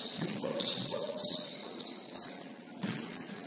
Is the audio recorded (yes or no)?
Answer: no